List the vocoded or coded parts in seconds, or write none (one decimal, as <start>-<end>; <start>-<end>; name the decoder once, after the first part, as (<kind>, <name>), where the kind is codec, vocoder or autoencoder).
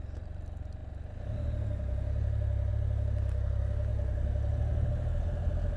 none